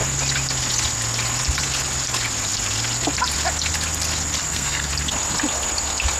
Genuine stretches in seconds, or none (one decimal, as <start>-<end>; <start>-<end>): 0.0-4.4; 4.9-6.2